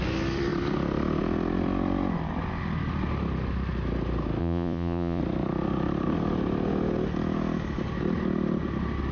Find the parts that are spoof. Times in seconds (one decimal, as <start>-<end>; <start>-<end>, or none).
4.4-5.2